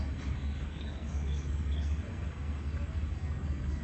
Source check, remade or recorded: remade